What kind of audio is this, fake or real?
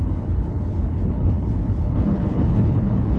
fake